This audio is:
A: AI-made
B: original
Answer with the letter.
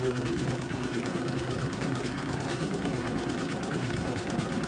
A